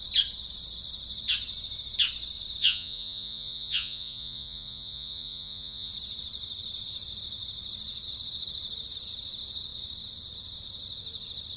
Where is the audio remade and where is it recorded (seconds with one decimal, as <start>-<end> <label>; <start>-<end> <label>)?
0.0-2.6 recorded; 2.6-5.9 remade; 5.9-11.6 recorded